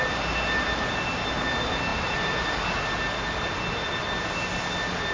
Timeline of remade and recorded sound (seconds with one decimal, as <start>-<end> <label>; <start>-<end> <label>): 0.0-5.1 recorded